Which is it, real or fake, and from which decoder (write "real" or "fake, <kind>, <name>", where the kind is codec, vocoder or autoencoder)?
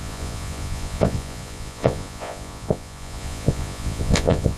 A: fake, vocoder, Vocos